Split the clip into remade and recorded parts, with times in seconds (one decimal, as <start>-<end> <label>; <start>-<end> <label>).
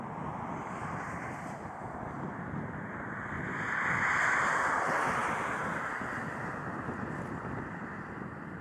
0.0-8.6 recorded